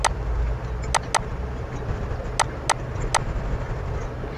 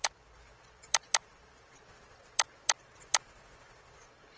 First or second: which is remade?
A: second